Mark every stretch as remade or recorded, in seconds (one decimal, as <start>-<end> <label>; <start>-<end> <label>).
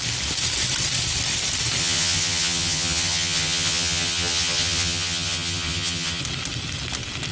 0.0-1.8 recorded; 1.8-6.2 remade; 6.2-7.3 recorded